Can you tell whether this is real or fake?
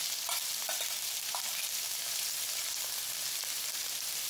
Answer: fake